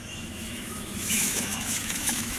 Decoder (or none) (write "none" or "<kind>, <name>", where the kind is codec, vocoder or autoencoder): autoencoder, DAC-VAE